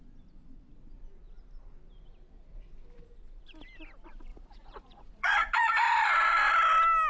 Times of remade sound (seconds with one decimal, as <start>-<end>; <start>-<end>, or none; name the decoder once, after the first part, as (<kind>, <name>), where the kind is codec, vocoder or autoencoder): 4.3-6.0 (vocoder, Vocos)